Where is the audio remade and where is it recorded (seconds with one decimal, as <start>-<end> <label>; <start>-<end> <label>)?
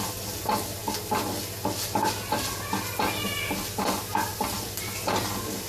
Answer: 0.0-5.7 recorded